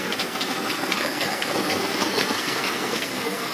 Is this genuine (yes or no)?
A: no